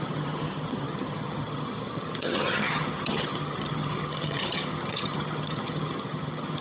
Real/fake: fake